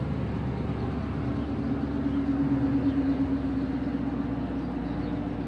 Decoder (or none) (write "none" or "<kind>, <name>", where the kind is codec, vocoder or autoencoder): none